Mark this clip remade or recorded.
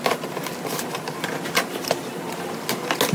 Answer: recorded